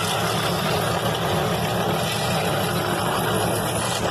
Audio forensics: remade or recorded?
recorded